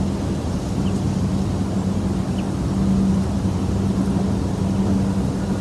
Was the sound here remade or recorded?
recorded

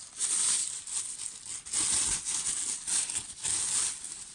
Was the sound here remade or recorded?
recorded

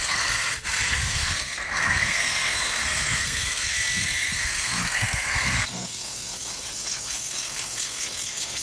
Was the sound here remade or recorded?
remade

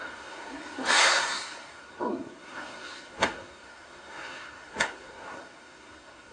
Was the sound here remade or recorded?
remade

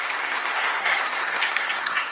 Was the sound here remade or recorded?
remade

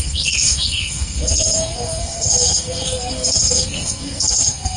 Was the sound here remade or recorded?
remade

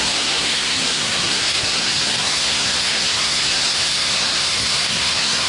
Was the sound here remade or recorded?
remade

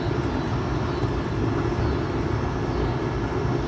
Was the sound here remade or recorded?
recorded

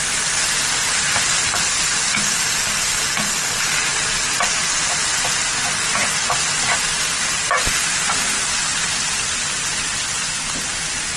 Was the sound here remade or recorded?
recorded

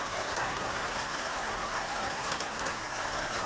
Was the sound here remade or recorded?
remade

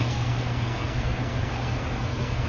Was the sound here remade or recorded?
remade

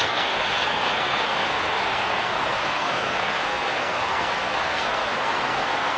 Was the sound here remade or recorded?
remade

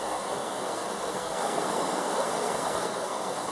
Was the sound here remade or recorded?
remade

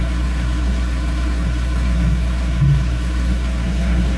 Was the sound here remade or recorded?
remade